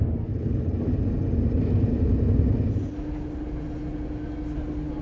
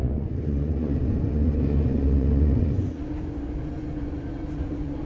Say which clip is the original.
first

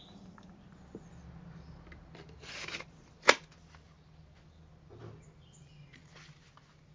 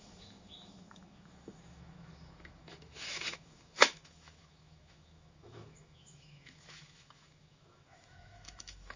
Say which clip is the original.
first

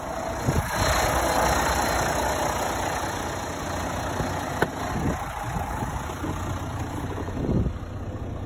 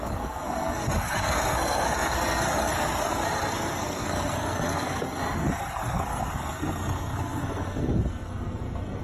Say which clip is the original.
first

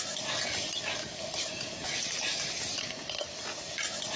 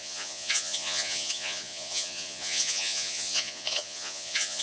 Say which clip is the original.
first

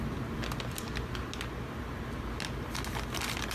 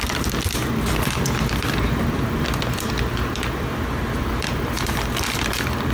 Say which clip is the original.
first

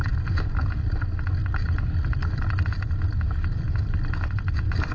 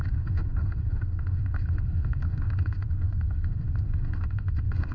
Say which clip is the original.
first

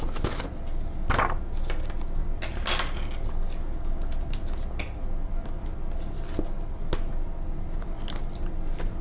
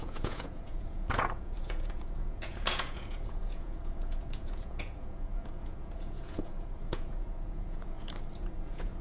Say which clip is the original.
first